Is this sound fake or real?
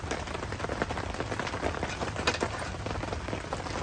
fake